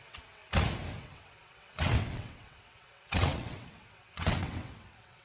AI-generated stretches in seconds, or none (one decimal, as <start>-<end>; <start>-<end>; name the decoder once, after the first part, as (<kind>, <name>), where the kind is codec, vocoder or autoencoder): 0.0-0.4 (vocoder, WaveNeXt); 1.0-5.2